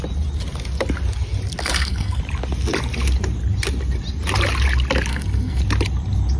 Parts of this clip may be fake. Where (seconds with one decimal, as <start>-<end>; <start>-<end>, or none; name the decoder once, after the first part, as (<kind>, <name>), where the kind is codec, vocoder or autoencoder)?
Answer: 1.6-2.2 (codec, SNAC); 5.1-5.6